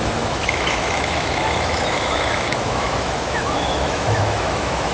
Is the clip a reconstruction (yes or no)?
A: yes